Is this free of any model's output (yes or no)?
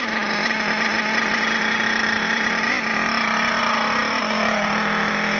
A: yes